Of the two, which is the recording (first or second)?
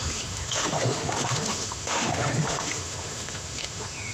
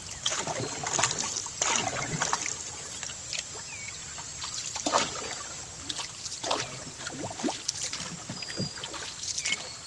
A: second